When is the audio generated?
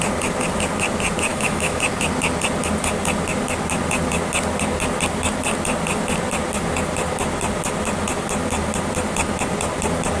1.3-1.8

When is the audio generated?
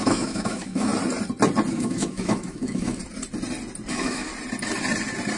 0.0-0.9; 1.7-3.0; 3.9-4.3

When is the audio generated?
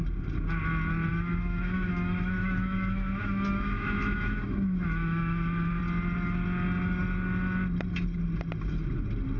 1.1-5.8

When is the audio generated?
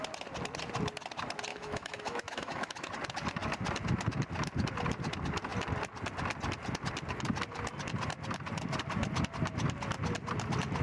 1.5-2.9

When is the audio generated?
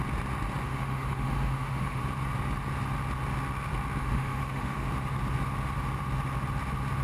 0.6-2.0; 4.0-4.9